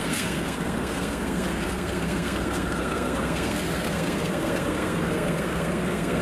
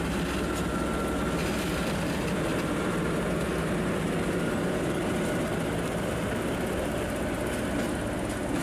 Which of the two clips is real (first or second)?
second